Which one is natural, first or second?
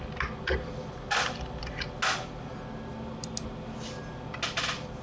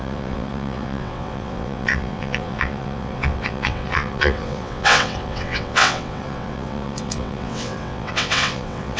first